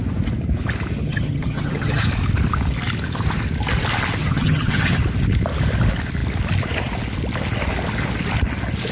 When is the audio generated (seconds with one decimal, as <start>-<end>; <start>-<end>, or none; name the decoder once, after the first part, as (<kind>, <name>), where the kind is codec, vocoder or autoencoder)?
1.0-2.1 (vocoder, HiFi-GAN); 4.2-5.0